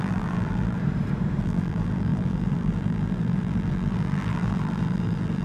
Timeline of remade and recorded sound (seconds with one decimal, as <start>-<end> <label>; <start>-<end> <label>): 0.0-0.8 remade; 0.8-1.4 recorded; 1.4-5.4 remade